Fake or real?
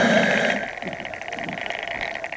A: real